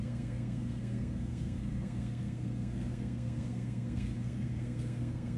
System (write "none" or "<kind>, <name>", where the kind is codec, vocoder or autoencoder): codec, SNAC